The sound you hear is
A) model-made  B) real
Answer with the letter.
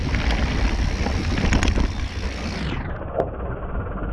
B